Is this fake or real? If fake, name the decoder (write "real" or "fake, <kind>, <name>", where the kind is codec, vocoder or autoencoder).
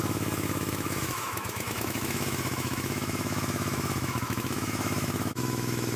fake, autoencoder, DAC-VAE